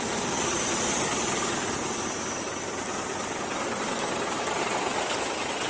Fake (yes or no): no